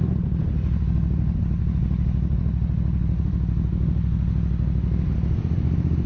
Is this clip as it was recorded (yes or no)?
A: no